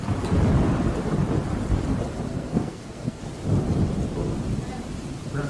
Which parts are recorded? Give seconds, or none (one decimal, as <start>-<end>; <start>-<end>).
0.0-2.3; 3.2-5.5